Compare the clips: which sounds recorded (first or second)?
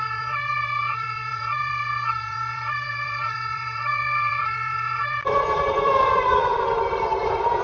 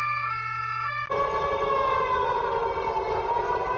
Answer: second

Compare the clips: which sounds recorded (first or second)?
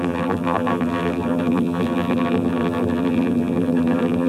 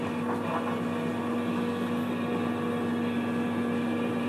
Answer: second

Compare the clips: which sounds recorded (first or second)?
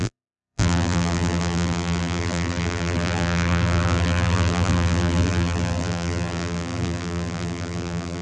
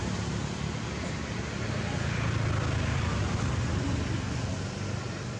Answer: second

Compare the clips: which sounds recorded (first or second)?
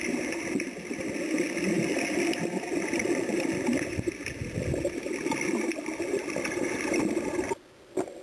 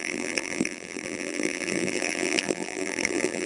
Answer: first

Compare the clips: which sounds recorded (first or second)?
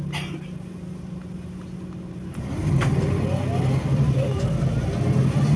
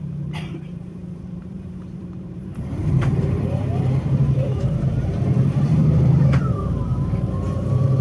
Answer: first